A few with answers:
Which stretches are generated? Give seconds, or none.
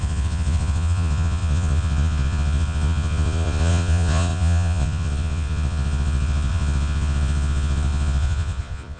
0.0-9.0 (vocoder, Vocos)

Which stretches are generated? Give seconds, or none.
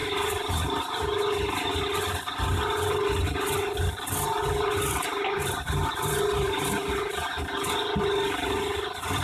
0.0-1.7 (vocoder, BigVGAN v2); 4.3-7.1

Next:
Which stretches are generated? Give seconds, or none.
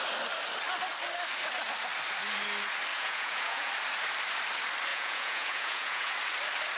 2.9-3.7 (vocoder, Vocos); 4.9-6.1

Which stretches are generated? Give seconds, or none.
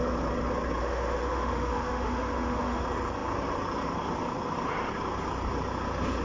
0.8-2.8 (autoencoder, DAC-VAE)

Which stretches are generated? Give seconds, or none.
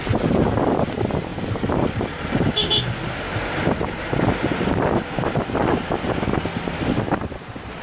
none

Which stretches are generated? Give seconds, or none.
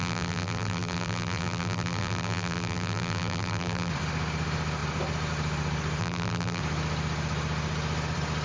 0.0-3.9 (vocoder, BigVGAN v2); 6.0-6.6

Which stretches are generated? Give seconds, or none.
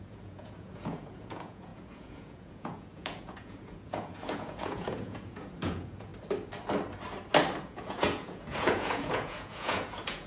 0.0-6.1 (vocoder, Vocos); 7.6-10.3